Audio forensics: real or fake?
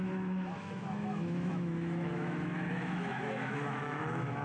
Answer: fake